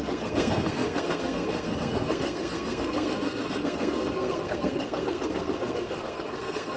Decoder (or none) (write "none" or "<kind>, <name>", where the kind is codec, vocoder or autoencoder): codec, SNAC